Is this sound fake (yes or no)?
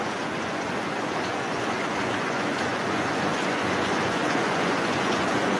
yes